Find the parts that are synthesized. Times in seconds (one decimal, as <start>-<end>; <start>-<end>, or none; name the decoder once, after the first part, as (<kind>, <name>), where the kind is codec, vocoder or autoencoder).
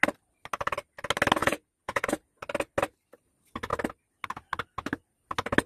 1.4-2.4 (vocoder, Vocos)